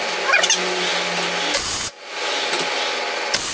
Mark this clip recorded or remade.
recorded